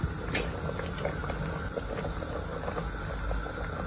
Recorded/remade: recorded